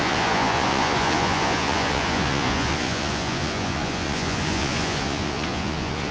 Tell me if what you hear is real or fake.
fake